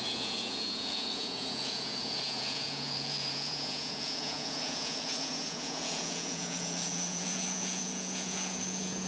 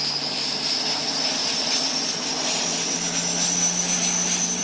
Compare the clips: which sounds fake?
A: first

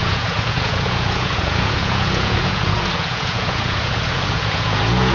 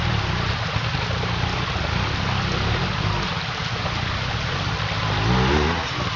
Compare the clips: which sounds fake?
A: first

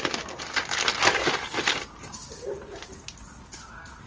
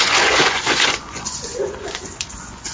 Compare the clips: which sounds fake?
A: second